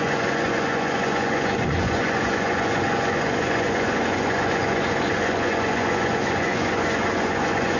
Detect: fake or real fake